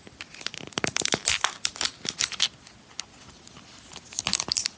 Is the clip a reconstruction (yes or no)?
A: no